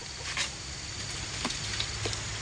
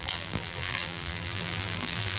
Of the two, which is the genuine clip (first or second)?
first